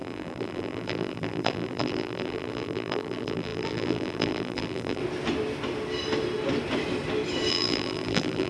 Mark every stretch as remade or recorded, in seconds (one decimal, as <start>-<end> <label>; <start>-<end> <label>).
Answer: 0.0-5.0 remade; 5.0-7.5 recorded; 7.5-8.5 remade